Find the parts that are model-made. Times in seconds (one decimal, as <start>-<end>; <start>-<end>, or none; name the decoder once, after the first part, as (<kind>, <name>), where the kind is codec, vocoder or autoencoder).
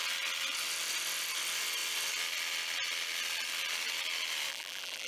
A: 4.5-5.1 (vocoder, BigVGAN v2)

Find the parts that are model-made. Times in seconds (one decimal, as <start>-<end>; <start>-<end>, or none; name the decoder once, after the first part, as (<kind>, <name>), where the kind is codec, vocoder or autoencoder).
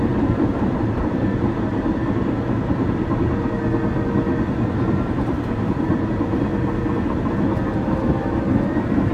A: 0.0-2.0 (vocoder, BigVGAN v2); 4.7-6.5; 7.7-9.1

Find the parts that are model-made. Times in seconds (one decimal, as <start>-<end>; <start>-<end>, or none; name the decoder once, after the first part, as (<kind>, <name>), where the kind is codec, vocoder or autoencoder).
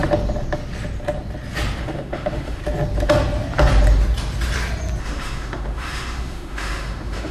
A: 1.8-2.6 (autoencoder, DAC-VAE); 5.0-7.3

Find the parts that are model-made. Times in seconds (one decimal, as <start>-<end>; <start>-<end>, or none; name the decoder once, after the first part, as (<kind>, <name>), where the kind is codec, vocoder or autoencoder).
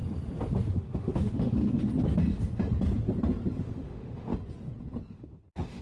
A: 0.7-1.8 (autoencoder, DAC-VAE); 3.6-4.3; 5.1-5.8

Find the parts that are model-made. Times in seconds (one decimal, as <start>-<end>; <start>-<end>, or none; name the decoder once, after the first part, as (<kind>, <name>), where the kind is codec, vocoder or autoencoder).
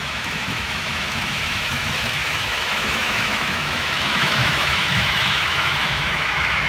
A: 0.0-6.7 (autoencoder, DAC-VAE)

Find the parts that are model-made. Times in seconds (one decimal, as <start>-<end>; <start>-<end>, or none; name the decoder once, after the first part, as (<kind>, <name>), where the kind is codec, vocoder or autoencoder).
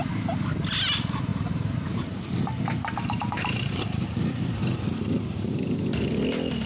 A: 1.3-4.6 (vocoder, BigVGAN v2)